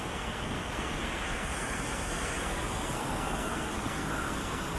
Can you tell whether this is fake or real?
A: fake